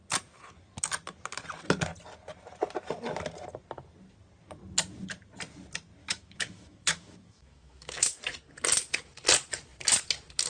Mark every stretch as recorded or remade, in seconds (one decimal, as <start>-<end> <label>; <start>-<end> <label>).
0.0-6.0 recorded; 6.0-8.2 remade; 8.2-10.5 recorded